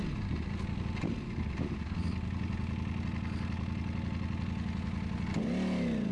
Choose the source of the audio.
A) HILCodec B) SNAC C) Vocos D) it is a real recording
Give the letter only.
D